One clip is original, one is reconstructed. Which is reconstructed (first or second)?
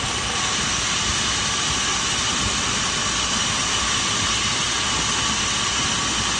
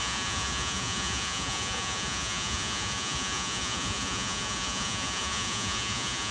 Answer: second